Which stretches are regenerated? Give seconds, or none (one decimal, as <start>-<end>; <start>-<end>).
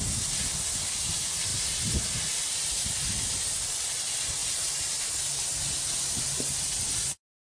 none